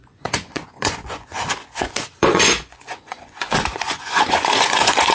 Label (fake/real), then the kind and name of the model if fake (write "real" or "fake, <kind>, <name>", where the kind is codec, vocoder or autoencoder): fake, vocoder, Vocos